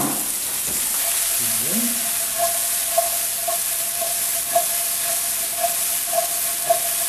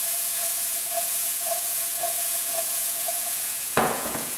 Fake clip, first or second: second